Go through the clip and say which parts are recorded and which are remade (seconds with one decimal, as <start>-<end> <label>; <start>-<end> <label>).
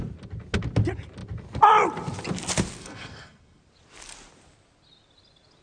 0.0-2.8 recorded; 2.8-3.6 remade; 3.6-5.6 recorded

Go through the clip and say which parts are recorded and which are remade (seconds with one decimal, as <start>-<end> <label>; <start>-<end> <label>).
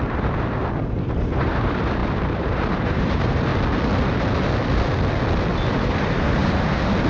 0.0-0.6 remade; 0.6-1.2 recorded; 1.2-3.5 remade; 3.5-5.7 recorded; 5.7-6.4 remade; 6.4-7.1 recorded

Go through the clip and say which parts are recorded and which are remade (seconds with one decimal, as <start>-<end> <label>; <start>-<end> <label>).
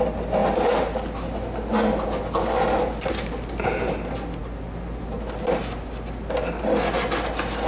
0.0-7.7 recorded